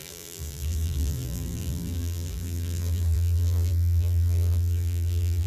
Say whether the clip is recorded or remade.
remade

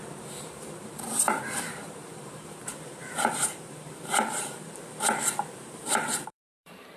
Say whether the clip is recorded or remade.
remade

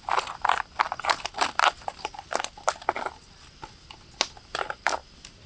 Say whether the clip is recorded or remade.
recorded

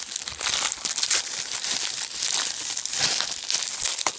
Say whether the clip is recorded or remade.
recorded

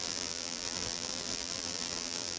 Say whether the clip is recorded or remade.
remade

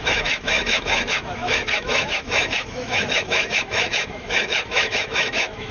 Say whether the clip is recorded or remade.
remade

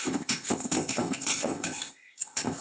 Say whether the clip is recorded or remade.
remade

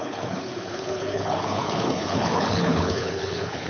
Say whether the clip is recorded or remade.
remade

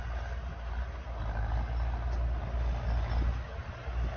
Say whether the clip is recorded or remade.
recorded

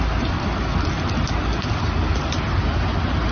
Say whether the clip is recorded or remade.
recorded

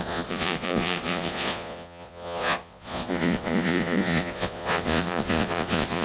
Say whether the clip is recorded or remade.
remade